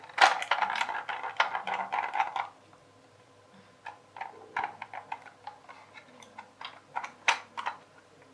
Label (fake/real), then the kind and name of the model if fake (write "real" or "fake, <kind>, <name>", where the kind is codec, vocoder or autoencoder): real